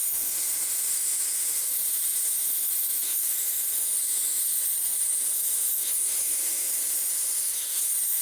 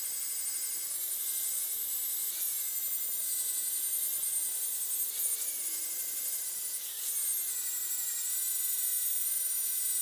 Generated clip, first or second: first